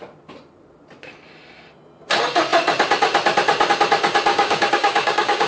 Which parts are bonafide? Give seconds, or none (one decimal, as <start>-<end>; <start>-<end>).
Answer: 0.0-4.3